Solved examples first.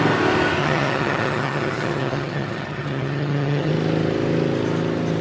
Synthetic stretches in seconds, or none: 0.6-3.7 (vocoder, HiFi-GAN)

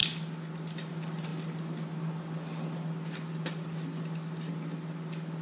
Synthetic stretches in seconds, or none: none

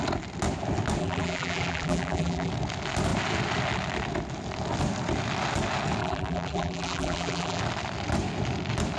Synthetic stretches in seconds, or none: 1.0-2.5 (vocoder, BigVGAN v2); 6.0-7.6

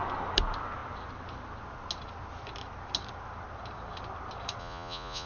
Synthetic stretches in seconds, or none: 4.6-5.3 (vocoder, Vocos)

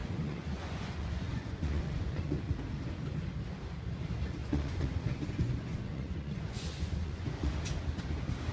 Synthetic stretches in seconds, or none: 0.0-2.6 (vocoder, Vocos); 4.4-7.6

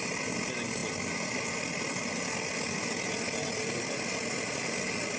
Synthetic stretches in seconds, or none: none